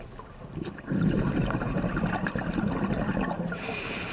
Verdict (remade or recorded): recorded